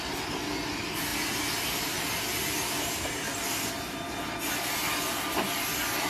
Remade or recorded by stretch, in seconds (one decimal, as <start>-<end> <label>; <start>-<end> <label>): 0.0-6.1 recorded